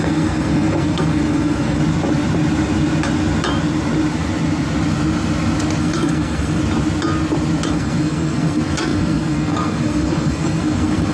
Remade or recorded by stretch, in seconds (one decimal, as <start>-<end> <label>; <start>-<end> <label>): 0.0-1.8 remade; 1.8-5.8 recorded; 5.8-6.6 remade; 6.6-7.7 recorded; 7.7-11.1 remade

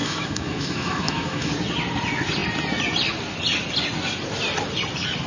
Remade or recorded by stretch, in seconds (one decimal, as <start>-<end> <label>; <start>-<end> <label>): 0.0-1.5 remade; 1.5-5.3 recorded

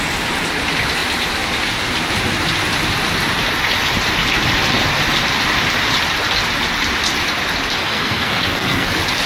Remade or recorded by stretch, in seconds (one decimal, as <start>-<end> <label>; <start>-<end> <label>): 0.0-7.8 recorded; 7.8-8.9 remade; 8.9-9.3 recorded

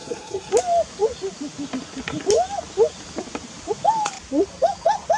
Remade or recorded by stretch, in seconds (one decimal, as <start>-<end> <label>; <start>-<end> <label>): 0.0-0.5 remade; 0.5-5.2 recorded

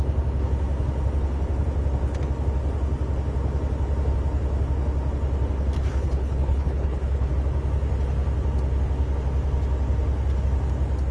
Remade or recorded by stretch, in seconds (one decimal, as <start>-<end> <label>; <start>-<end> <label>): 0.0-5.9 recorded; 5.9-7.3 remade; 7.3-11.1 recorded

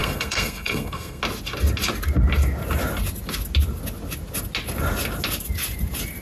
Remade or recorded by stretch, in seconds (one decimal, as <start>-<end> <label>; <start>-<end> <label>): 0.0-1.2 remade; 1.2-6.2 recorded

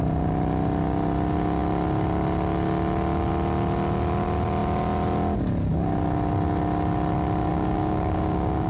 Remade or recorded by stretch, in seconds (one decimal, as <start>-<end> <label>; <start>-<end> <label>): 0.0-7.5 recorded; 7.5-8.7 remade

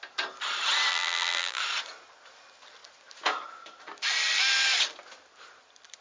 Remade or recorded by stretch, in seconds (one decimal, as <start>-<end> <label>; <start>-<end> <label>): 0.0-0.9 recorded; 0.9-1.6 remade; 1.6-6.0 recorded